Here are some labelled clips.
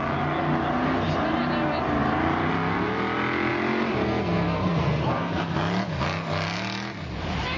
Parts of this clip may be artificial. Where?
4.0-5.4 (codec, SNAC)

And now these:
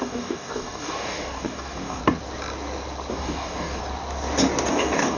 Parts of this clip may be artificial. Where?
0.0-2.0 (codec, DAC); 3.1-3.8; 4.7-5.2